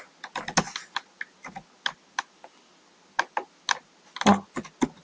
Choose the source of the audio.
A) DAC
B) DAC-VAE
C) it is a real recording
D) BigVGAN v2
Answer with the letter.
C